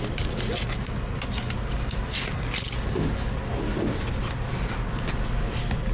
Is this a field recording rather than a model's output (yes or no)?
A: yes